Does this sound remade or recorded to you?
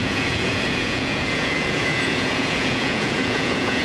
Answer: remade